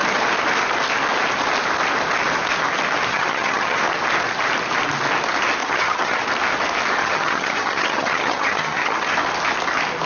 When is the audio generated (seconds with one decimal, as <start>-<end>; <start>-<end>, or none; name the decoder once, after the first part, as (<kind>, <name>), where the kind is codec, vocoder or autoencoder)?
3.1-3.8 (vocoder, HiFi-GAN); 5.6-6.2; 7.0-9.1